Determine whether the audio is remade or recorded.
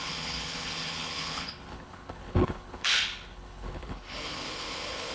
remade